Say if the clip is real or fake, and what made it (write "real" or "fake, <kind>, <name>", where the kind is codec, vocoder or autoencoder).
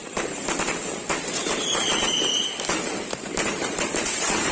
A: fake, vocoder, BigVGAN v2